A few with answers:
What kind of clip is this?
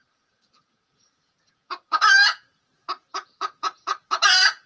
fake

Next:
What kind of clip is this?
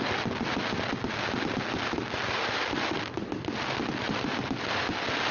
real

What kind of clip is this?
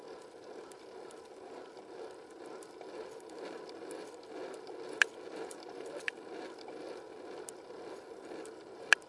real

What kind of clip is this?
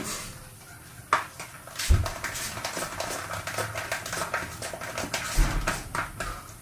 real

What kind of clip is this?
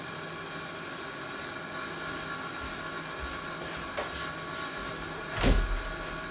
real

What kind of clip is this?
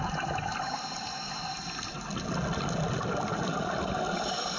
real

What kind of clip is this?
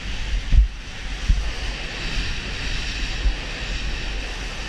real